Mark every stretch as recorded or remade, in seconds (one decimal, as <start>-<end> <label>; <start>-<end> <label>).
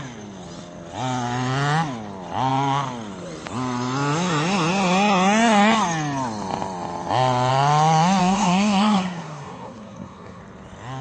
0.0-8.2 recorded; 8.2-10.4 remade; 10.4-11.0 recorded